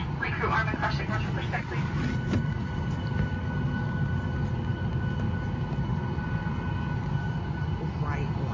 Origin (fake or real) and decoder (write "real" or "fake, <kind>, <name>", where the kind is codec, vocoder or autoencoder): real